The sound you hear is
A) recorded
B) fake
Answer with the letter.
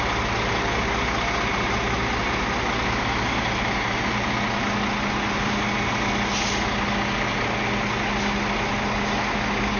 A